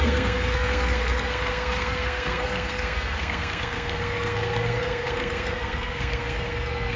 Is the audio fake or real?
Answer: fake